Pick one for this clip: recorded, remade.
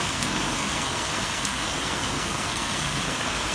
remade